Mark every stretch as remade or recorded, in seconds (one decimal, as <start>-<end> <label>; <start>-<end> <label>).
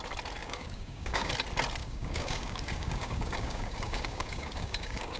0.0-0.4 recorded; 0.4-1.3 remade; 1.3-1.8 recorded; 1.8-5.2 remade